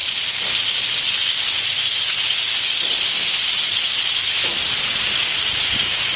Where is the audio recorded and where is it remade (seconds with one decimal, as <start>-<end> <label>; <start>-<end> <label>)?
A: 0.0-6.2 recorded

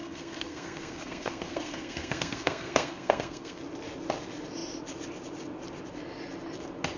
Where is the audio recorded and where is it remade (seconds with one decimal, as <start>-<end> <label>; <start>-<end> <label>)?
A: 0.0-3.6 remade; 3.6-7.0 recorded

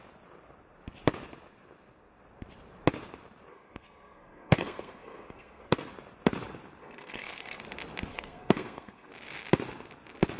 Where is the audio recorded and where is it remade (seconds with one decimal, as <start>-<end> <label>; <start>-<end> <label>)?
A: 0.0-3.5 recorded; 3.5-5.9 remade; 5.9-6.8 recorded; 6.8-7.6 remade; 7.6-8.1 recorded; 8.1-9.1 remade; 9.1-10.4 recorded

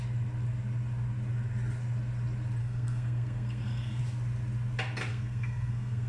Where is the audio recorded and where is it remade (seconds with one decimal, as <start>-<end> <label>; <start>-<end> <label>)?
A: 0.0-2.6 recorded; 2.6-4.0 remade; 4.0-5.1 recorded; 5.1-6.1 remade